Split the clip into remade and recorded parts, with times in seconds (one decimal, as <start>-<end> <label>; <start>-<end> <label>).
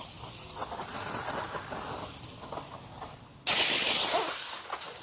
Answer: 0.0-5.0 recorded